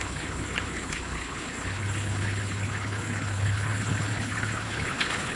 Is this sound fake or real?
fake